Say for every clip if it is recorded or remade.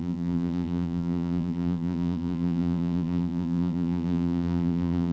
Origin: remade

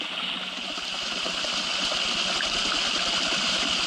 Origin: recorded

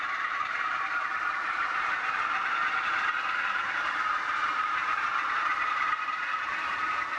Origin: remade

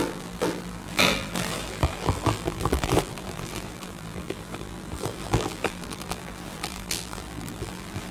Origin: remade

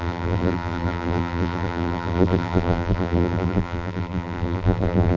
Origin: remade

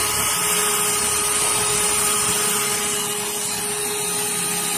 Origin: recorded